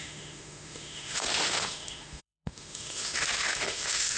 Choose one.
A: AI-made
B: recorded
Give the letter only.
A